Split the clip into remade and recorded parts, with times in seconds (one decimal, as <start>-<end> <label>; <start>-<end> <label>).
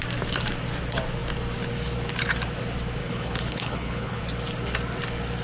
0.0-3.0 recorded; 3.0-4.2 remade; 4.2-5.4 recorded